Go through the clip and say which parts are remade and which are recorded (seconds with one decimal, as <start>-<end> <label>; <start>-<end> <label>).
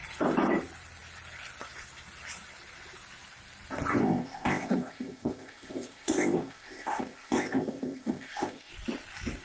0.0-4.0 recorded; 4.0-8.7 remade; 8.7-9.4 recorded